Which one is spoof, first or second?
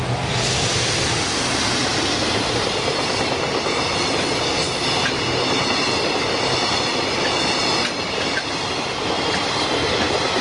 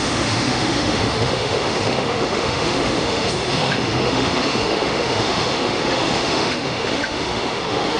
second